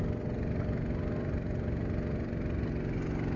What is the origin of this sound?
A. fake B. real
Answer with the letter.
B